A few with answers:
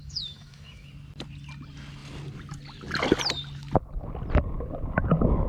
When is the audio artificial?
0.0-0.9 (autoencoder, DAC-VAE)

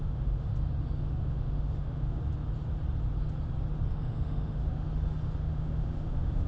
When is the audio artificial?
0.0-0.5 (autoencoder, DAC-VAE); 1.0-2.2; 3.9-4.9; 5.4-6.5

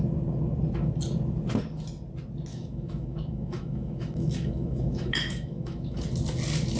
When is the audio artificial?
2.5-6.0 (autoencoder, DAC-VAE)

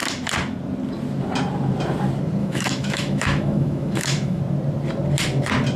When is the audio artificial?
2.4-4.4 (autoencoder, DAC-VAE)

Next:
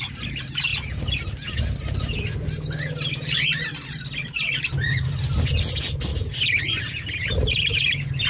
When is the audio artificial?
none

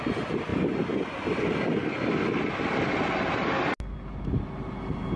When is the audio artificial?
none

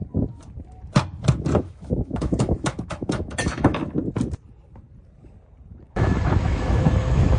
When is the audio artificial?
1.6-3.8 (autoencoder, DAC-VAE); 5.9-7.4

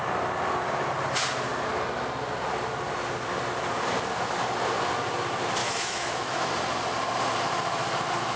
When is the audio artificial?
5.6-6.5 (autoencoder, DAC-VAE)